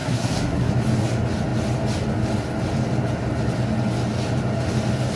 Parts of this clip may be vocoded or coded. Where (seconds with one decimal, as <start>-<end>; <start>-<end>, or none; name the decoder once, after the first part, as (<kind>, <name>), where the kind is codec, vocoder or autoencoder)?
0.0-0.7 (codec, SNAC)